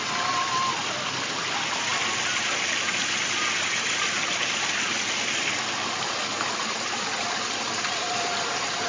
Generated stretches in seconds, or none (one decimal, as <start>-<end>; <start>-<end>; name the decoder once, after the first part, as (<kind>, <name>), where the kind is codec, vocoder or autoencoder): none